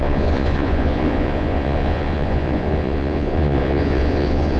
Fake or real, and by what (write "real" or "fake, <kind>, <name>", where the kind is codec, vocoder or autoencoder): fake, vocoder, Vocos